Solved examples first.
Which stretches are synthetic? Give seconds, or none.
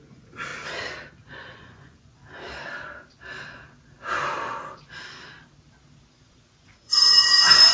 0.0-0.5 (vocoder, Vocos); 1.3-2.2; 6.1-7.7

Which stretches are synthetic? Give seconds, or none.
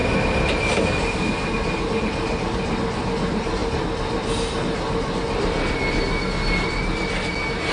none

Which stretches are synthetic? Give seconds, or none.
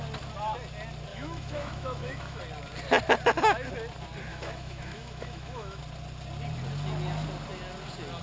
1.1-2.4 (autoencoder, DAC-VAE); 4.3-5.8